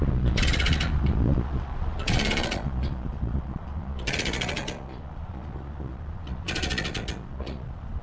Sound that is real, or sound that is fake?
fake